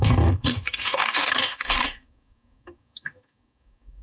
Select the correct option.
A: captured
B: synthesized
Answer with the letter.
B